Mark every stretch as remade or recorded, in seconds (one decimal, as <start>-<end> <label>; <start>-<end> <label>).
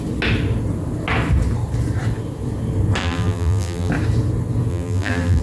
0.0-3.0 recorded; 3.0-3.9 remade; 3.9-4.7 recorded; 4.7-5.4 remade